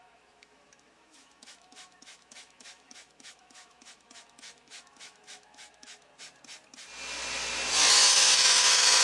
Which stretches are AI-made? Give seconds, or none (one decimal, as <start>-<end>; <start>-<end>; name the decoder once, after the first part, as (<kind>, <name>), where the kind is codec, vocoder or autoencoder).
0.0-6.1 (autoencoder, DAC-VAE); 7.9-9.0